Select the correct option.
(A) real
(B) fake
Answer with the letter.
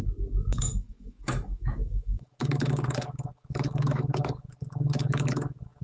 B